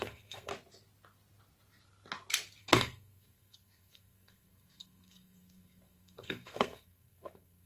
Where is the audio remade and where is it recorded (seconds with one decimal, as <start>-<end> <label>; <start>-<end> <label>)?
0.0-0.5 remade; 0.5-2.6 recorded; 2.6-7.7 remade